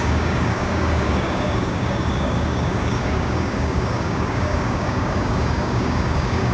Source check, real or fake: fake